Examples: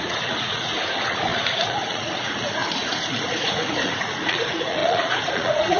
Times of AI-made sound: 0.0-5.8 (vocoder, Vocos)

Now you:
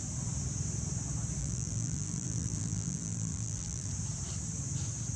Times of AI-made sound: 1.4-3.9 (vocoder, BigVGAN v2)

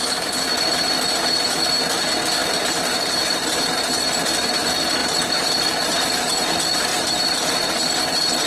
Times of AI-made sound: 2.4-4.3 (vocoder, BigVGAN v2); 5.0-6.5; 6.9-7.9

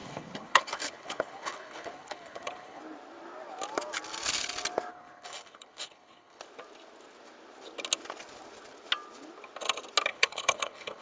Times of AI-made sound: 0.0-2.8 (codec, HILCodec); 4.9-6.4; 10.1-11.0

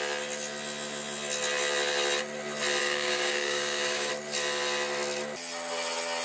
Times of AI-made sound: 2.8-4.1 (codec, DAC)

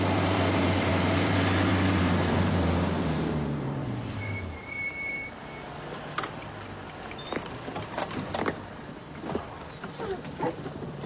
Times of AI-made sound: 0.0-5.4 (vocoder, BigVGAN v2); 10.5-11.1

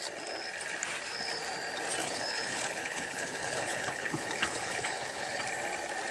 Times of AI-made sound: 2.0-5.4 (codec, HILCodec)